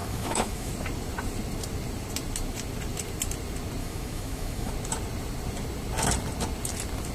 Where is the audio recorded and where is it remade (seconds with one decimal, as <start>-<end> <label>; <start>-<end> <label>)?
0.0-0.7 remade; 0.7-3.8 recorded; 3.8-4.7 remade; 4.7-7.1 recorded